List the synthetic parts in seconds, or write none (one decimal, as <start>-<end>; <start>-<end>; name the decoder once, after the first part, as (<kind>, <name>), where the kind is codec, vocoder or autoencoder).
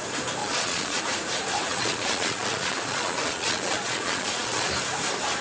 0.4-1.0 (vocoder, Vocos); 1.7-4.7